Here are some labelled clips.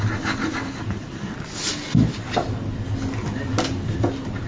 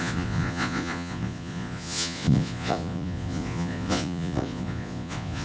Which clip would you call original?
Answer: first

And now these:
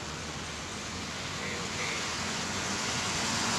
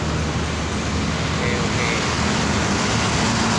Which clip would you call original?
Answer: second